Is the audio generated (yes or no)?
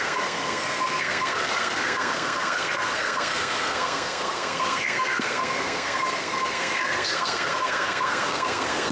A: yes